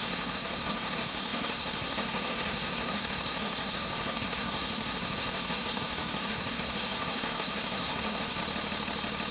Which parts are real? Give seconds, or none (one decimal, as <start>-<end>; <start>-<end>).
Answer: 8.4-9.3